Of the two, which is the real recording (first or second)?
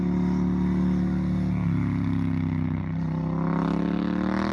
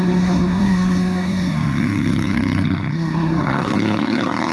first